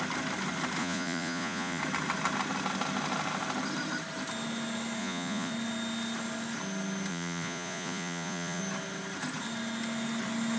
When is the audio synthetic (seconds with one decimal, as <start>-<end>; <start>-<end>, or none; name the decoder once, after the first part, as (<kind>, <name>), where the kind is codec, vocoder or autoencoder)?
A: 0.8-1.8 (vocoder, Vocos); 5.0-5.5; 7.1-8.6